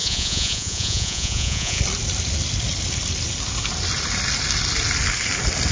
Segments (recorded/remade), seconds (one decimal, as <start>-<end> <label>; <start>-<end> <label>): 0.0-1.8 remade; 1.8-5.7 recorded